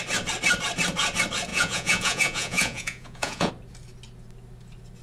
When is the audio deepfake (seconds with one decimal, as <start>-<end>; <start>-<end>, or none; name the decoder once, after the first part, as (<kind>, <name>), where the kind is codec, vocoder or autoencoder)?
1.5-3.5 (vocoder, Vocos)